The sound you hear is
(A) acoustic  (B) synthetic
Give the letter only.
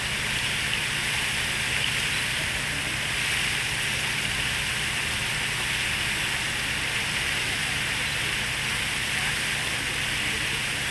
A